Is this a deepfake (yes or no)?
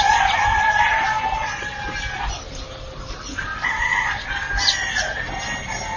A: no